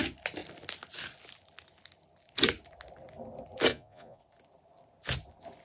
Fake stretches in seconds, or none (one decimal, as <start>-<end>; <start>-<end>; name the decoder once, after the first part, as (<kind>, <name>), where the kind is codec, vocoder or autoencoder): 3.7-4.2 (vocoder, Vocos)